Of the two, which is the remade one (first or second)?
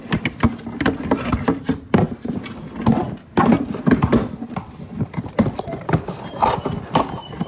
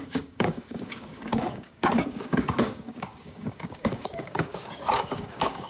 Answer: second